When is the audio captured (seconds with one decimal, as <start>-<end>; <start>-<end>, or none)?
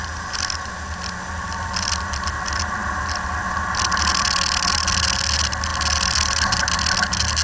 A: 0.0-7.4